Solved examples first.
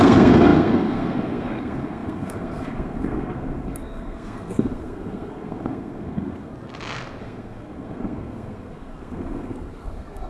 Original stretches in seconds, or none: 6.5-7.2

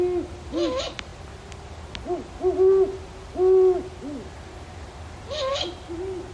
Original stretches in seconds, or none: 0.0-6.3

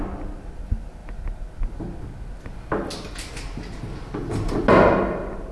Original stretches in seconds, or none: 0.0-5.5

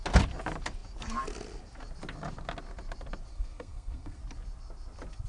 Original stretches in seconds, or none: 0.0-3.3; 4.2-5.3

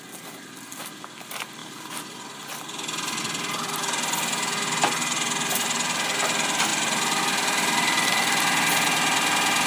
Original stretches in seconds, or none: 0.0-9.7

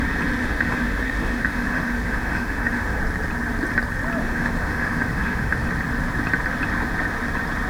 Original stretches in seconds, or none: 0.0-0.4; 3.0-4.2; 5.7-7.7

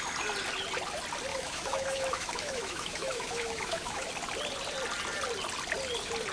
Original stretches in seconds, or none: 0.0-1.3; 4.1-6.3